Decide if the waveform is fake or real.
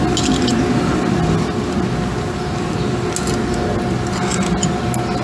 real